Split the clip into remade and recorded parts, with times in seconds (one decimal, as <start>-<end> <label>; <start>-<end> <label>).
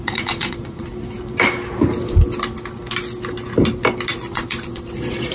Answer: 0.0-0.9 remade; 0.9-4.1 recorded; 4.1-5.3 remade